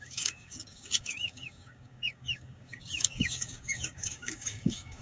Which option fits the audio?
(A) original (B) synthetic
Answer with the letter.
B